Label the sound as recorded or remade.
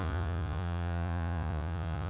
remade